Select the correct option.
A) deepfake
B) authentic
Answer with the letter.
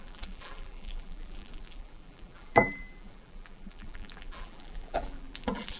A